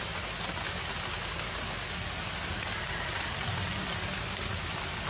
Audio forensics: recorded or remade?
recorded